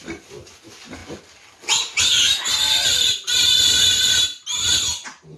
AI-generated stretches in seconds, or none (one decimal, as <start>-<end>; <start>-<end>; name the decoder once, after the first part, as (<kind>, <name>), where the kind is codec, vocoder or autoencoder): none